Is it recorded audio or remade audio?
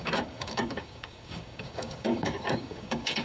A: remade